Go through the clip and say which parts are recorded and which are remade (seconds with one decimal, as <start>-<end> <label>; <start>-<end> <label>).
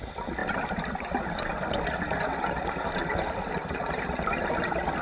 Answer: 0.0-5.0 recorded